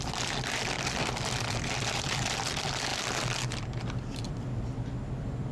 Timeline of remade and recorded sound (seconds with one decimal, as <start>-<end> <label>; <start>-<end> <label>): 0.0-2.9 remade; 2.9-3.8 recorded; 3.8-5.5 remade